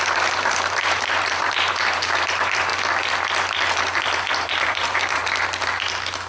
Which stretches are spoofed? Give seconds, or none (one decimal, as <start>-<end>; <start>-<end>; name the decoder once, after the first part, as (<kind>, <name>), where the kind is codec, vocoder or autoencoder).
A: 0.0-2.7 (vocoder, BigVGAN v2); 4.3-5.2